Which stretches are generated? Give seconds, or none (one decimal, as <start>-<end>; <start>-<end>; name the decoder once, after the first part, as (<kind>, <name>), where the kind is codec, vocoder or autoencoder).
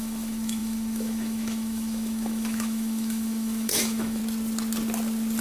0.0-4.2 (autoencoder, DAC-VAE)